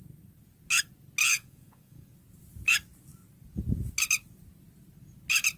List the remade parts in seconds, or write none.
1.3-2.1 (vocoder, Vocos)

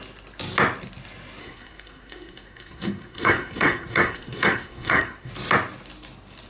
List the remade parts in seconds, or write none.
1.4-5.3 (codec, SNAC)

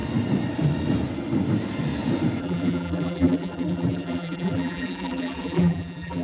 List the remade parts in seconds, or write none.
2.4-6.2 (vocoder, BigVGAN v2)

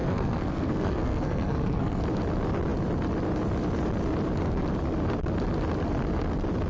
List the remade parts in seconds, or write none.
0.0-2.0 (codec, SNAC)

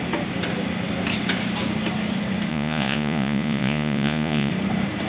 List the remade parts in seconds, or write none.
2.5-4.5 (vocoder, Vocos)